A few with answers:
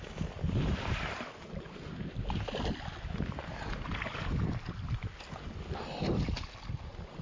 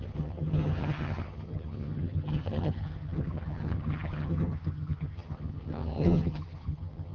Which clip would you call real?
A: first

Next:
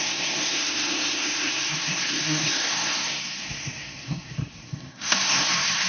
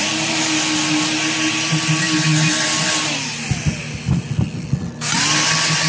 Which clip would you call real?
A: second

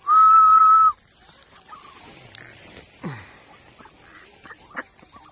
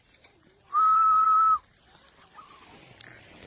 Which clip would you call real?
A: first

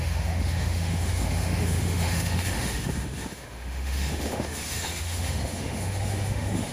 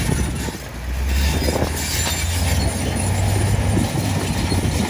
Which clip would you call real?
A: second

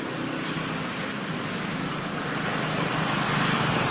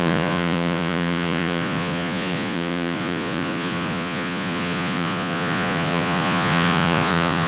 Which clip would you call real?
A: first